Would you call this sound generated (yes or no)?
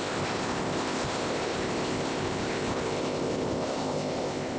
yes